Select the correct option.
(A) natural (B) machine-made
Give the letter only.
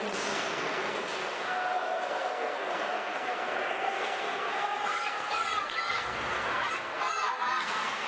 B